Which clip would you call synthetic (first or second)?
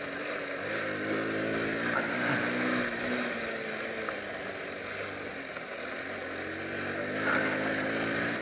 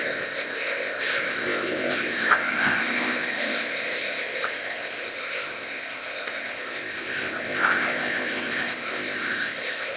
second